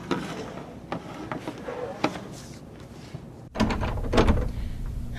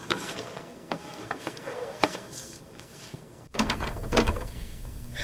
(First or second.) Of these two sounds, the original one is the first